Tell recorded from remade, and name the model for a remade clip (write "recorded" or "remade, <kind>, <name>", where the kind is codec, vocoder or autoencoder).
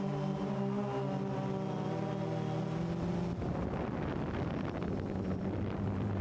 recorded